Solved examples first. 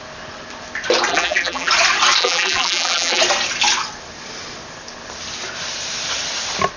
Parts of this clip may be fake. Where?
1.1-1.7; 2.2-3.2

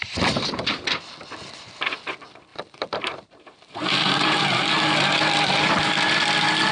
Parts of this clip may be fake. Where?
2.5-4.4

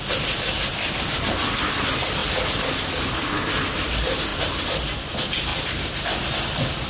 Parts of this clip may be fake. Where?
2.2-2.7

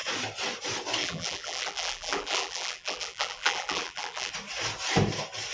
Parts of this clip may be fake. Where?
1.0-4.3